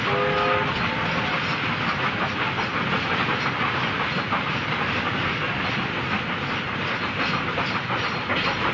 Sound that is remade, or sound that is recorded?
recorded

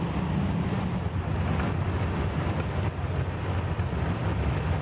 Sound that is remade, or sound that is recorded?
recorded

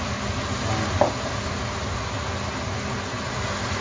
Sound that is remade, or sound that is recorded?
recorded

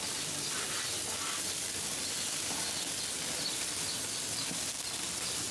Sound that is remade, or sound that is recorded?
recorded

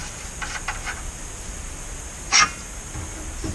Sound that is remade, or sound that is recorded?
recorded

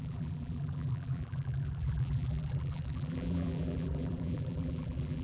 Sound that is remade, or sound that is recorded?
remade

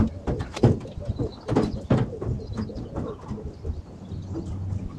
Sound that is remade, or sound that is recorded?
recorded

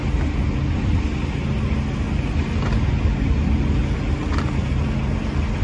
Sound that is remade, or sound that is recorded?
recorded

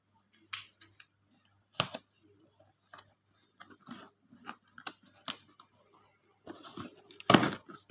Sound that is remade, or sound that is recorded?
recorded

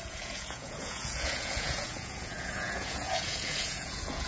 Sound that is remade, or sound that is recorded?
remade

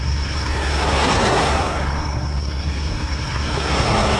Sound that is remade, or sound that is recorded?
remade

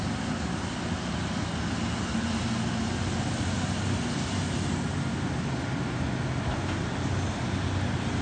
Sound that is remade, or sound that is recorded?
recorded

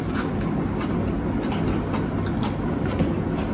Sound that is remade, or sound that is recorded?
recorded